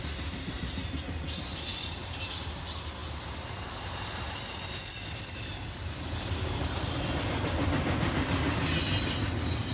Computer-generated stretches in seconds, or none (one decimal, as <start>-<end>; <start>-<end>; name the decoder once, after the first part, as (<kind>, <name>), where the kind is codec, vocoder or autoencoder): 2.0-2.6 (vocoder, BigVGAN v2)